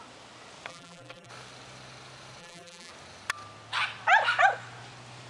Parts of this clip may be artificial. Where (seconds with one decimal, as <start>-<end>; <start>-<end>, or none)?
0.7-1.3; 2.4-2.9